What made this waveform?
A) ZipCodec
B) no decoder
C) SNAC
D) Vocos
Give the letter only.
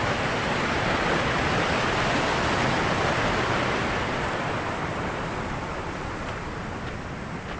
B